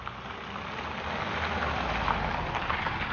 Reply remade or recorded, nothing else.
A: recorded